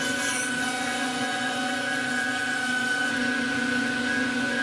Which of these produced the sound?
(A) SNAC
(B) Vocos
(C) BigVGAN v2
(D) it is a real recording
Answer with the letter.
B